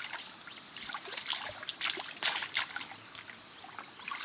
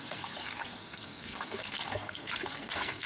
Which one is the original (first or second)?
first